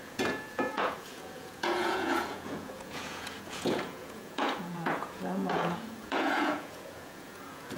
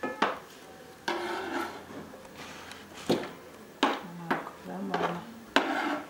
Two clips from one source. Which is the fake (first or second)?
first